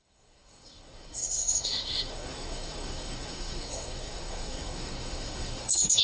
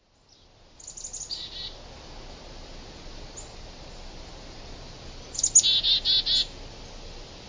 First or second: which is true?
second